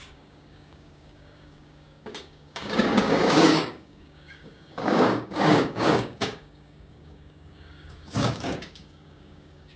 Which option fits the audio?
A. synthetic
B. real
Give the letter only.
A